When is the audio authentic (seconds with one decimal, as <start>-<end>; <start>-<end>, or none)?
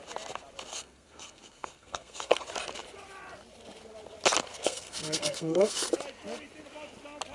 0.0-0.7; 2.4-4.5; 5.9-7.3